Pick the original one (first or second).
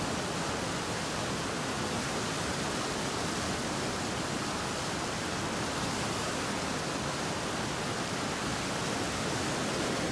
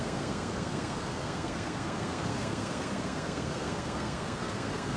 first